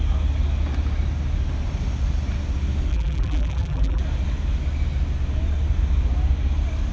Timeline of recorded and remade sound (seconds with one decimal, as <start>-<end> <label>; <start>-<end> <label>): 0.0-2.9 recorded; 2.9-4.0 remade; 4.0-6.9 recorded